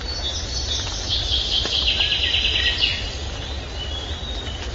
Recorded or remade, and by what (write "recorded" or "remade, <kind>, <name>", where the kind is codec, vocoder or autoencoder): recorded